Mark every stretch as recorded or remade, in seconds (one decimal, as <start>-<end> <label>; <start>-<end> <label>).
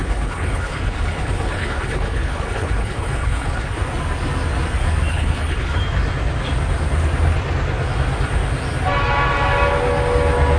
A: 0.0-3.8 remade; 3.8-5.1 recorded; 5.1-5.8 remade; 5.8-10.6 recorded